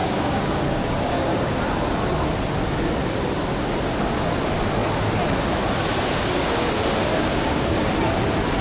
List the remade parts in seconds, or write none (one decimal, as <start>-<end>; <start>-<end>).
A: 0.0-1.6; 7.2-7.9